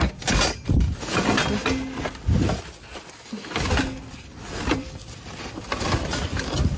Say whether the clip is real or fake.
real